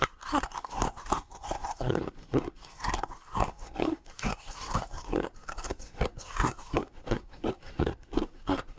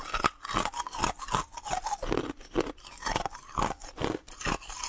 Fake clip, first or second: first